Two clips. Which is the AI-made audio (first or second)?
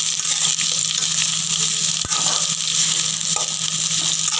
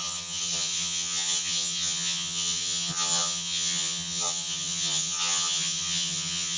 second